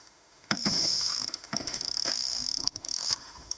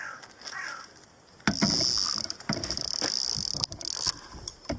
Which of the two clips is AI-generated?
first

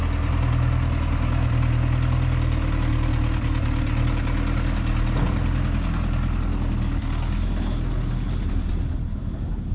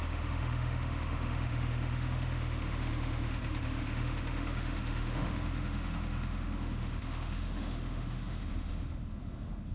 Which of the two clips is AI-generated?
second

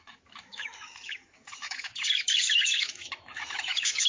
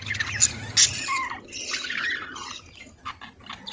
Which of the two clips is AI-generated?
first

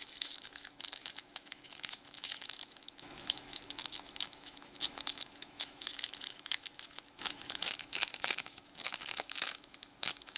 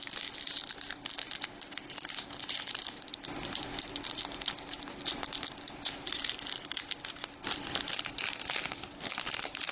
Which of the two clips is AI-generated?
first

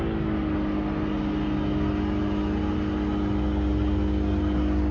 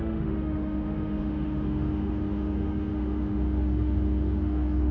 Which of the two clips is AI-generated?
second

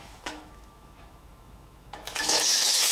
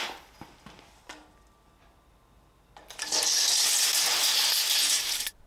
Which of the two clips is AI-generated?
first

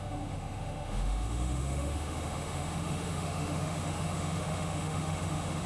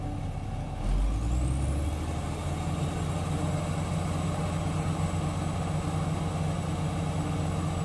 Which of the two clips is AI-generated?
first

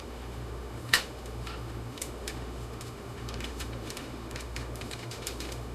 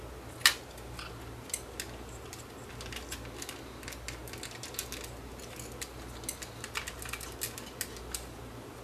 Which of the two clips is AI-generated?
first